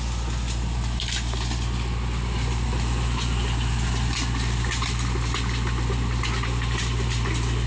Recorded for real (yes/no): yes